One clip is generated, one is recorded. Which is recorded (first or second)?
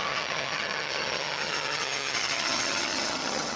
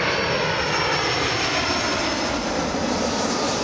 second